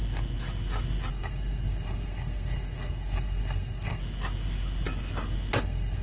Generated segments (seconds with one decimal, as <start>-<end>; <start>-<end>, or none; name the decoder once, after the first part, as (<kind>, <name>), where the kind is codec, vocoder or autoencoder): 1.1-4.0 (codec, SNAC); 5.6-6.0